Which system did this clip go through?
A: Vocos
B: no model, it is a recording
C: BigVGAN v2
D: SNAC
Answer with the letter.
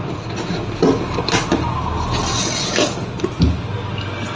B